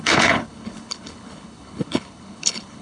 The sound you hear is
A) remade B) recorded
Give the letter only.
A